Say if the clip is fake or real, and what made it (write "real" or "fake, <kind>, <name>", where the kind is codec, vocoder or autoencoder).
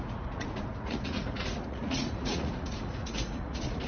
fake, vocoder, Vocos